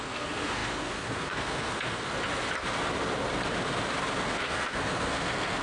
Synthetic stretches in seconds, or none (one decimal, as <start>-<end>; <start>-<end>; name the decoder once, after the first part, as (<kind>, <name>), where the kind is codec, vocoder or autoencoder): 0.0-2.2 (codec, SNAC); 4.2-5.6

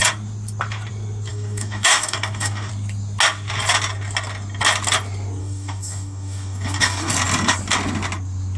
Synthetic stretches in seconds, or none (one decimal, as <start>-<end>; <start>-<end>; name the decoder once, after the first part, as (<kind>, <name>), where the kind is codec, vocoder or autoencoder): 1.3-2.7 (codec, DAC); 5.4-7.1

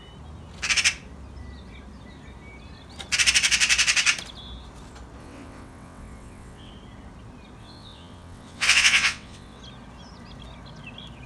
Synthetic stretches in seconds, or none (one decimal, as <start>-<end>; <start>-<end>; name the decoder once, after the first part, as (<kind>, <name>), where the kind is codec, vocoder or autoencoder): 5.2-6.7 (vocoder, WaveNeXt); 7.6-9.6